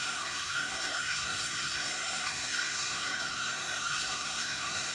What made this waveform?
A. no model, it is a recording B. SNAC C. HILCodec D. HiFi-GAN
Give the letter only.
B